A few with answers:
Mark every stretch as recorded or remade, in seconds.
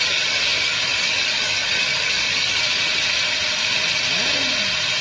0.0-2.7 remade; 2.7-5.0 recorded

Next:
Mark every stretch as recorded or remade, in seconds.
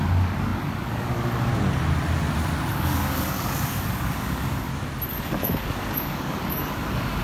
0.0-1.5 remade; 1.5-2.7 recorded; 2.7-4.7 remade; 4.7-5.2 recorded; 5.2-7.2 remade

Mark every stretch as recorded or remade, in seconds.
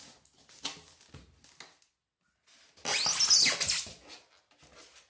0.0-5.1 recorded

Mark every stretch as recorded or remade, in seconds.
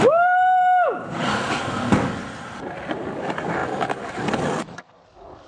0.0-2.2 remade; 2.2-3.0 recorded; 3.0-5.5 remade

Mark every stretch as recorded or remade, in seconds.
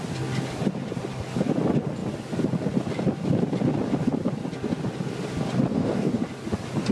0.0-5.7 recorded; 5.7-6.2 remade; 6.2-6.9 recorded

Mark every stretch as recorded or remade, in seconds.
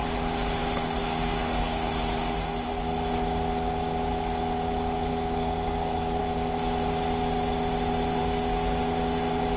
0.0-1.0 recorded; 1.0-1.9 remade; 1.9-5.1 recorded; 5.1-6.2 remade; 6.2-8.2 recorded; 8.2-8.8 remade; 8.8-9.6 recorded